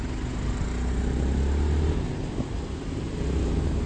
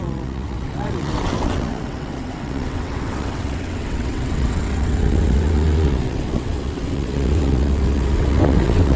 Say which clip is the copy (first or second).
second